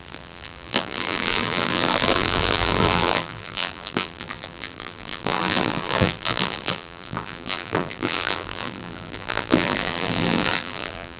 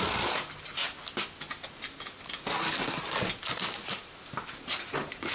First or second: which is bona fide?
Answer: second